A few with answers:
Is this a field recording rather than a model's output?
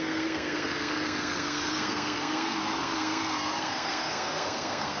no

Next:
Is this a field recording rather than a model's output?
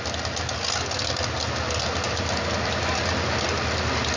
yes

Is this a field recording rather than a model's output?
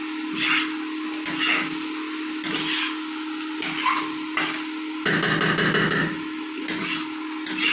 yes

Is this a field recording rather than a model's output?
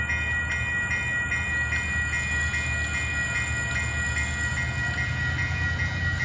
yes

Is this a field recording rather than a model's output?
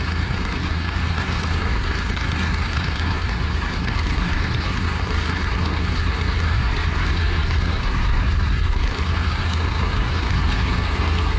no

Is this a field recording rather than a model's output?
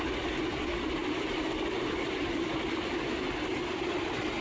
yes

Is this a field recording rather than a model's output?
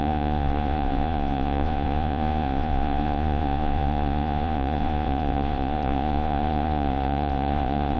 no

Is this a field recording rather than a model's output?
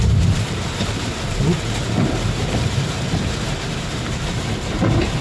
no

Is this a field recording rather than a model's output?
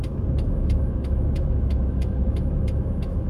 no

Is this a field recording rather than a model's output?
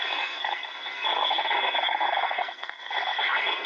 no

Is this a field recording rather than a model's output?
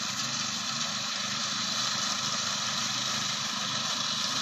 yes